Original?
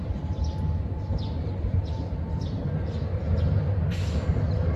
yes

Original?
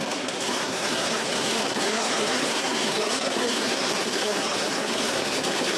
no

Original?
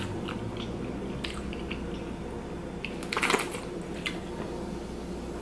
yes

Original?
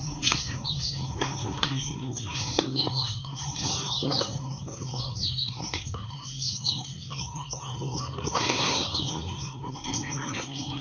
no